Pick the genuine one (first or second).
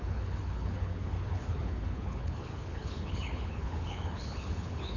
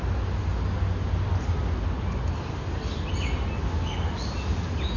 second